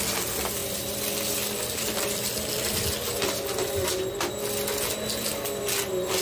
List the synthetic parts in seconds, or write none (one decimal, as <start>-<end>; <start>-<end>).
none